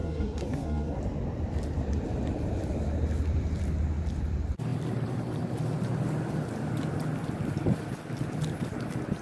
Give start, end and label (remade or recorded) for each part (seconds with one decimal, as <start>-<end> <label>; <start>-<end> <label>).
0.0-1.0 remade; 1.0-9.2 recorded